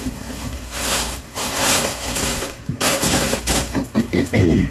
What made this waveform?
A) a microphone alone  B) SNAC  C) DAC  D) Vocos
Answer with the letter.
B